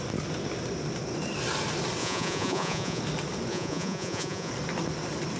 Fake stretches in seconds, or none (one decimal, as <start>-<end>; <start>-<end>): 2.0-3.0; 3.5-4.5